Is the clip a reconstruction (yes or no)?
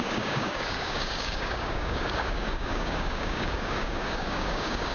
yes